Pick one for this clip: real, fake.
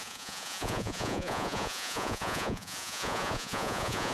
fake